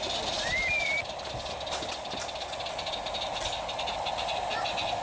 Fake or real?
real